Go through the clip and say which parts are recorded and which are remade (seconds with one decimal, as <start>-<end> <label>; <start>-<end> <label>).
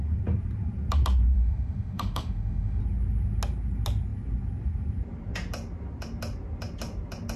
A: 0.0-1.3 recorded; 1.3-2.8 remade; 2.8-7.4 recorded